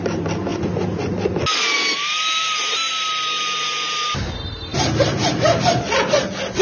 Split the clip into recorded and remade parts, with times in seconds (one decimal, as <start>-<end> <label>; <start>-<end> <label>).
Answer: 0.0-6.6 recorded